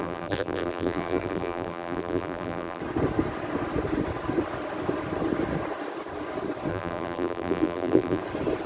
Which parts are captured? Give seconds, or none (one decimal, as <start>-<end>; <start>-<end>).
2.8-6.7; 8.2-8.7